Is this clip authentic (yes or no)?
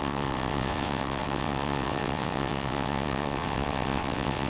no